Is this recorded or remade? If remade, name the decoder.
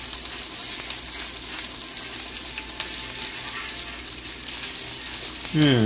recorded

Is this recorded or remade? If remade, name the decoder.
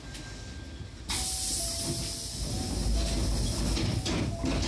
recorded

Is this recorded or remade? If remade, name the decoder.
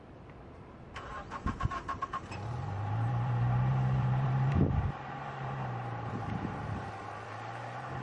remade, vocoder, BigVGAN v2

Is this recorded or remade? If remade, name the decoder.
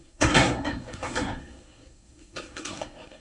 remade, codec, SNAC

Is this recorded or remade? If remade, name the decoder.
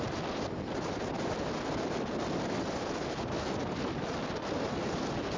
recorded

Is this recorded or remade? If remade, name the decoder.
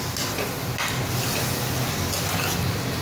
recorded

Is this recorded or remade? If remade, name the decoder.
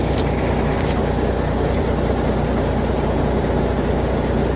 recorded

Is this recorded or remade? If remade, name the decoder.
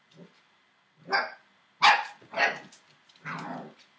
recorded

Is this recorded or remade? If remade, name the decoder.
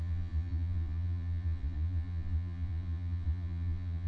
remade, vocoder, Vocos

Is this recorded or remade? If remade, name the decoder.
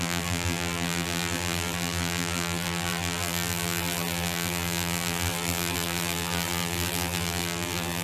remade, vocoder, BigVGAN v2